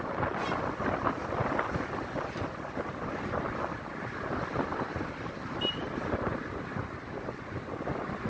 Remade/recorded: recorded